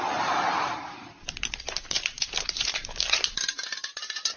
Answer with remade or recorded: remade